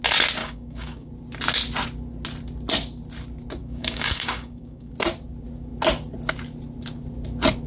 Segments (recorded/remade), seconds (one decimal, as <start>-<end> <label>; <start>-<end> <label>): 0.0-0.4 recorded; 0.4-1.1 remade; 1.1-3.6 recorded; 3.6-4.9 remade; 4.9-7.7 recorded